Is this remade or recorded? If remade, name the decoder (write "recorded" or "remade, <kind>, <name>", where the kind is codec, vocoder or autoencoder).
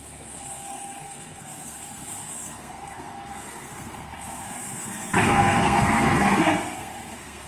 remade, codec, SNAC